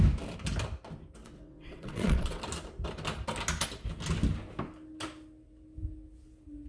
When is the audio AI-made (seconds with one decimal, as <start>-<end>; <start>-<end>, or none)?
1.2-2.4